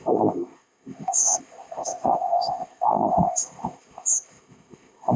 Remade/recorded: remade